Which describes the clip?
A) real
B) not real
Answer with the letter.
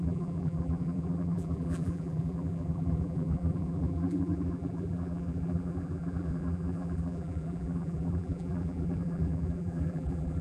B